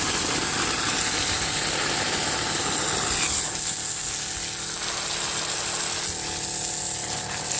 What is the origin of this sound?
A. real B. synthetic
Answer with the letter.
A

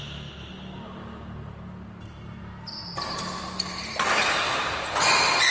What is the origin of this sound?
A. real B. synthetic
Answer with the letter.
A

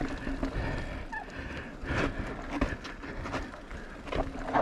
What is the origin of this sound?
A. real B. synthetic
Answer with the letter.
A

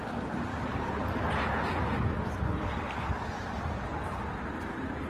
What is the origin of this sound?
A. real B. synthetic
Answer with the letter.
A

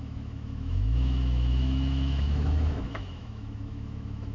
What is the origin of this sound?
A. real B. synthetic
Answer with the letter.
B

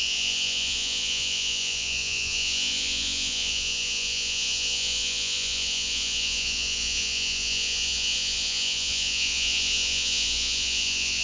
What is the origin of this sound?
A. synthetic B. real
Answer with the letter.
A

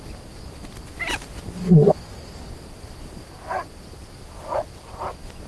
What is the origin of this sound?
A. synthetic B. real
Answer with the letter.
B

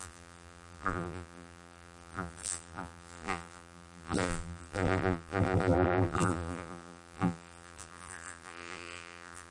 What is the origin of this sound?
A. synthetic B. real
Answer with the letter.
A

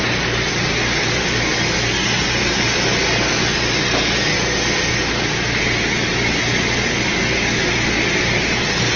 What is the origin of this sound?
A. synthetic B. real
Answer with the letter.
B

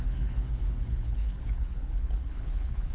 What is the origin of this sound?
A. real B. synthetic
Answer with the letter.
B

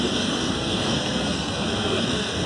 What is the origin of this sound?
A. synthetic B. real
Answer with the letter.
A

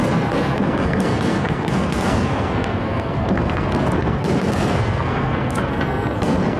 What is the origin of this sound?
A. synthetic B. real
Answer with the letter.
A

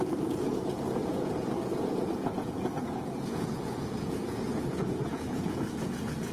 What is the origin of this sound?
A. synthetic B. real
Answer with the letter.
A